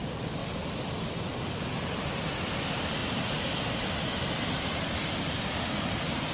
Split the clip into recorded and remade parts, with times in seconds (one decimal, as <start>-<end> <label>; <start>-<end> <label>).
0.0-0.4 recorded; 0.4-1.8 remade; 1.8-3.0 recorded; 3.0-5.4 remade; 5.4-6.3 recorded